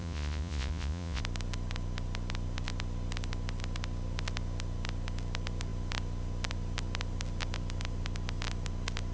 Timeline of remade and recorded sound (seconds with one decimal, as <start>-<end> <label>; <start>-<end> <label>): 0.0-1.2 remade; 1.2-9.1 recorded